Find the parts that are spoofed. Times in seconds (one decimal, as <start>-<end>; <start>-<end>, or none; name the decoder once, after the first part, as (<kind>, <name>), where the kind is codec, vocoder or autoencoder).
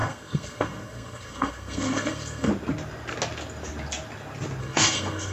0.0-2.5 (codec, SNAC); 4.6-5.3